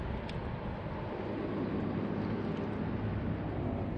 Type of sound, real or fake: real